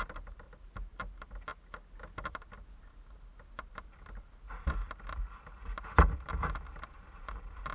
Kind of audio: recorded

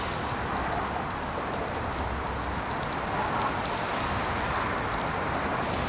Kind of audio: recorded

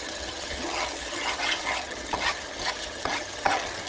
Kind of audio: remade